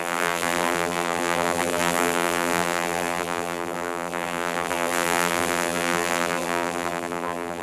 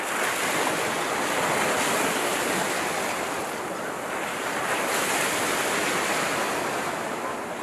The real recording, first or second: second